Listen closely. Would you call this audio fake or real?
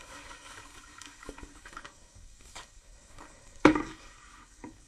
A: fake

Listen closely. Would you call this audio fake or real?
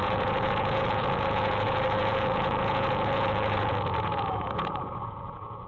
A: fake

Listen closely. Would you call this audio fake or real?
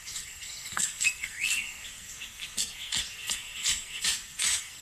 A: fake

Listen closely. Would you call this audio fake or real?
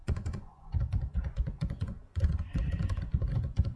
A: fake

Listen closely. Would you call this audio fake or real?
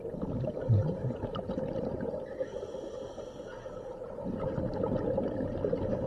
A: real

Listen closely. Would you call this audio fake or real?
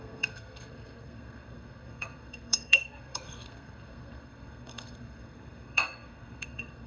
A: fake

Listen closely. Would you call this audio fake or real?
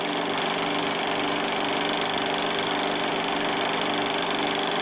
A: real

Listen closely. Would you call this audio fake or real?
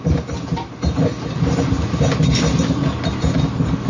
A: real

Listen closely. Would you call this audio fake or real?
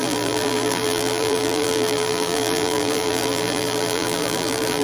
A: fake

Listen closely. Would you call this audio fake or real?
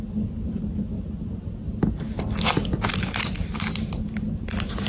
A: real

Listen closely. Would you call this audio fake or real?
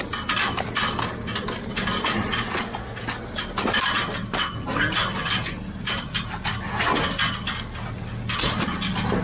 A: real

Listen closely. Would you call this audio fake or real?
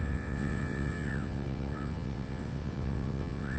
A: fake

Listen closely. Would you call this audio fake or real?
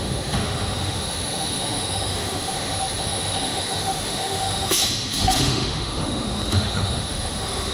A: fake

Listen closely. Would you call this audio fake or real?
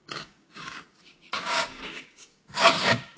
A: fake